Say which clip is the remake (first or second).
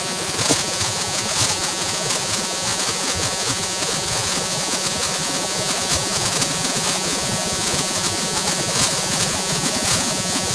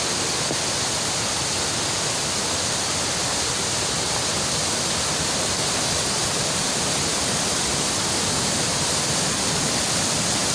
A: first